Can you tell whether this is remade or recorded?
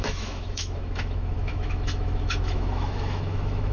remade